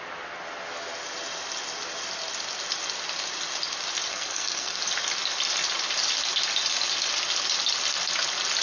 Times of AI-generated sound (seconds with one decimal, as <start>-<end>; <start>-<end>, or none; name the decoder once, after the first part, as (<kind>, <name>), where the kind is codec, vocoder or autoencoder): 4.1-4.8 (codec, SNAC)